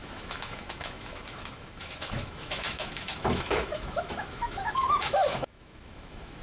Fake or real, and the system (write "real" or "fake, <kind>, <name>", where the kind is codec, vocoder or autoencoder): fake, autoencoder, DAC-VAE